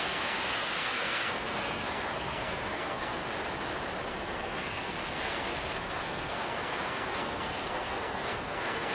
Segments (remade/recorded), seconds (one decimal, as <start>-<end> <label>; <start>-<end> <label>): 0.0-3.2 remade; 3.2-4.1 recorded; 4.1-8.9 remade